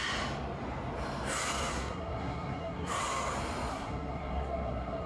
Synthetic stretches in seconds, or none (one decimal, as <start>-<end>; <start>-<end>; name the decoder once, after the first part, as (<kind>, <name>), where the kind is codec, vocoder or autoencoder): 1.7-3.0 (codec, SNAC); 3.7-5.1